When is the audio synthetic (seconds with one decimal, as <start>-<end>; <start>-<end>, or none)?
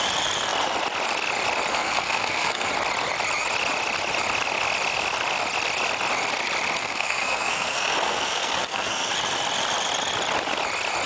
1.7-2.7; 6.8-9.1